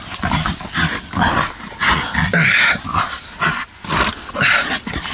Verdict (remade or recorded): recorded